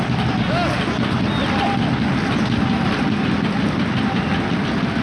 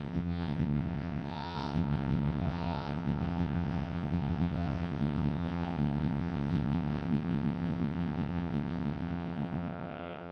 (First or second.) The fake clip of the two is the second